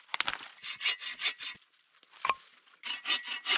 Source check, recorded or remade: recorded